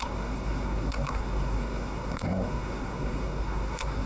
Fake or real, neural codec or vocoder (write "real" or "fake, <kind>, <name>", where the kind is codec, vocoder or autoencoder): fake, codec, SNAC